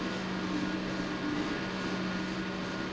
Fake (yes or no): no